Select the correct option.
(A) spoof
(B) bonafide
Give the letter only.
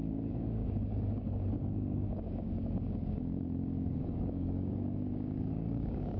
A